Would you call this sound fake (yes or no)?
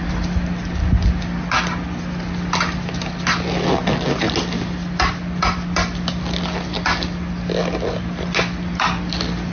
no